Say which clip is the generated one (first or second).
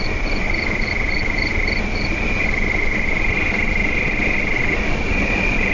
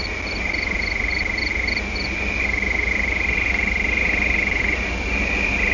first